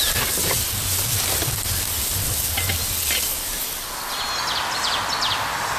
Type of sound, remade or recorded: recorded